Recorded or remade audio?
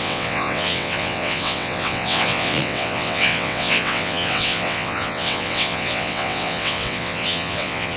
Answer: remade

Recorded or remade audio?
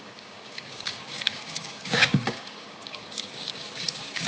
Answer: remade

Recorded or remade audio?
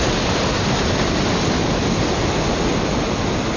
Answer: recorded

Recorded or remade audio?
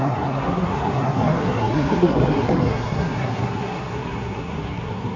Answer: remade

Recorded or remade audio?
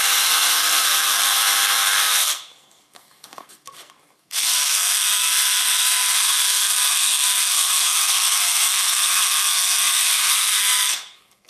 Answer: remade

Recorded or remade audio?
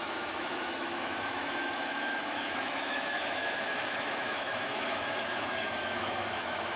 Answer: remade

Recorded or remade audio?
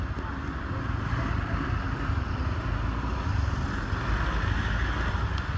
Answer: recorded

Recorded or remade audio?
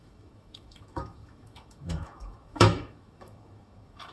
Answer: remade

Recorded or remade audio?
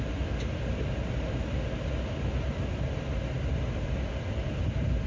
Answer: recorded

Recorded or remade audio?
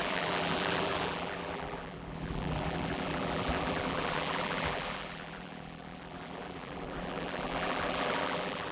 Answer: remade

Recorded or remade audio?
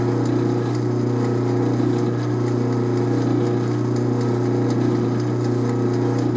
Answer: recorded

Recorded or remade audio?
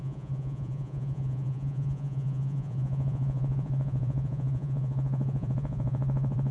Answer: remade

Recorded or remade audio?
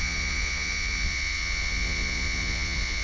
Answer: remade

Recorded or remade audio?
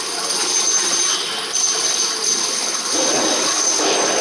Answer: recorded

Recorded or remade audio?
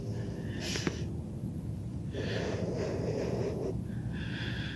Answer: recorded